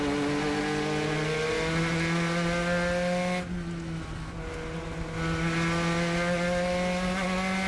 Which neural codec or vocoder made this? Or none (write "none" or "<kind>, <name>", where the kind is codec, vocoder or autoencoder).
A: none